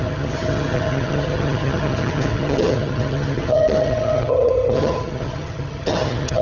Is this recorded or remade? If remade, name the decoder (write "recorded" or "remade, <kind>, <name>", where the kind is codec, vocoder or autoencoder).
remade, vocoder, HiFi-GAN